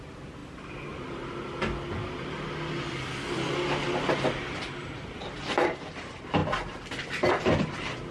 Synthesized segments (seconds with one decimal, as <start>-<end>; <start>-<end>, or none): none